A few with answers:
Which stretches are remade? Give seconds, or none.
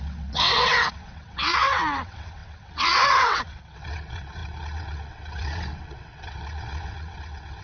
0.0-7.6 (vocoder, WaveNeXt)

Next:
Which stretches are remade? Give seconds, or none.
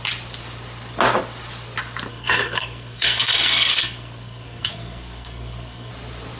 2.1-5.9 (codec, SNAC)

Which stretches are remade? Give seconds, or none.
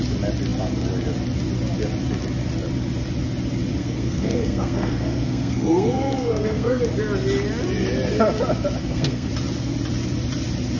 3.8-6.8 (codec, SNAC); 8.8-9.3